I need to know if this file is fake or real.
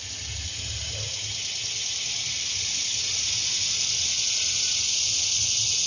real